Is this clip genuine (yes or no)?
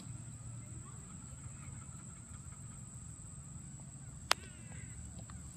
yes